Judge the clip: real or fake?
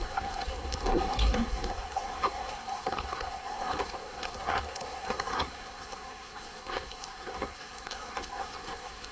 fake